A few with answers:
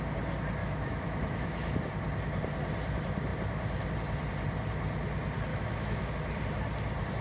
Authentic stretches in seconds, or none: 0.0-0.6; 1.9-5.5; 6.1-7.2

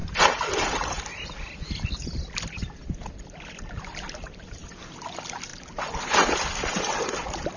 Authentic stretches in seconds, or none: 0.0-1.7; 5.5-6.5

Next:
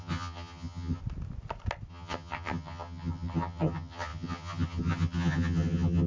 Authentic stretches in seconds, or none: 1.0-1.9

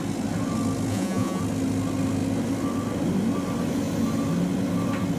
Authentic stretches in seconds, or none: 0.0-0.9; 1.4-5.2

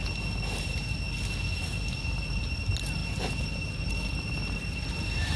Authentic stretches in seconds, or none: 0.0-5.4

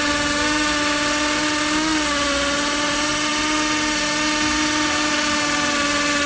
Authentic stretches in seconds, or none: 0.0-6.3